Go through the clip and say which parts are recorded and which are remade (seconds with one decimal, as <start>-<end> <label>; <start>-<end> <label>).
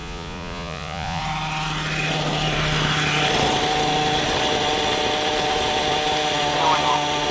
0.0-1.2 remade; 1.2-7.3 recorded